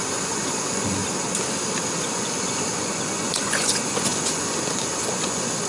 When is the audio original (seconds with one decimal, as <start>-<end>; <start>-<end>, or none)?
1.0-2.0